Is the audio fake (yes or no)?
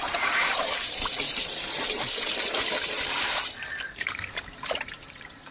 yes